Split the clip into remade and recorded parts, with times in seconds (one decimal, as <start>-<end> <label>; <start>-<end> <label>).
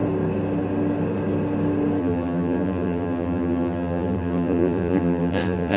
0.0-2.0 recorded; 2.0-5.8 remade